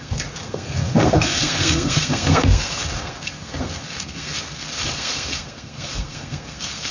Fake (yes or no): yes